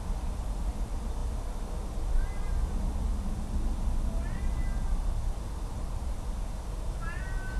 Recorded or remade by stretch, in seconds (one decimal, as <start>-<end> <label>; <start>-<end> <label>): 0.0-7.6 recorded